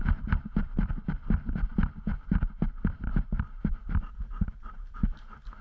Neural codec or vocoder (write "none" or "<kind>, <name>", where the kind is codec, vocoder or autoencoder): none